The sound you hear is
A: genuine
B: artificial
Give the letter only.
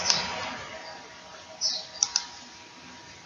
A